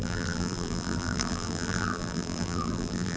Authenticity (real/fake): fake